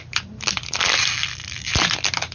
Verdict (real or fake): real